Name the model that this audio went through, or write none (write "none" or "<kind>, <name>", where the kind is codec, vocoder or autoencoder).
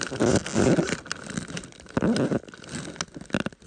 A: none